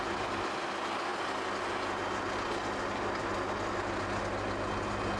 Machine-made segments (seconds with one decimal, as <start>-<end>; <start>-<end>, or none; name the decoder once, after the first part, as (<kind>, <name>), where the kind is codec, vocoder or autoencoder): none